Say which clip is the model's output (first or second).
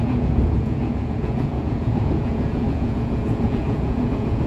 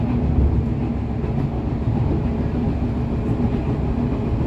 first